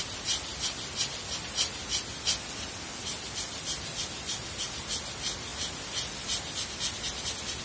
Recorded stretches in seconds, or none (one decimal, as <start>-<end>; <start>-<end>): 0.0-7.6